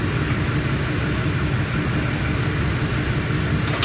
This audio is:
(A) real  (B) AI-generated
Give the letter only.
A